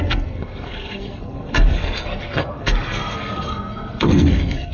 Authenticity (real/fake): fake